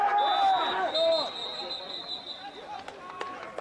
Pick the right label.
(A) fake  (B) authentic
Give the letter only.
B